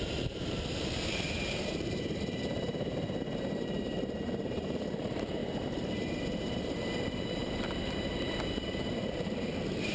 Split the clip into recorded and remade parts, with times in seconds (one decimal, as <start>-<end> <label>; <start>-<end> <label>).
0.0-5.4 remade; 5.4-6.4 recorded; 6.4-9.9 remade